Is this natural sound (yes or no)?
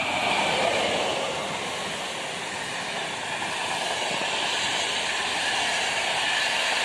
yes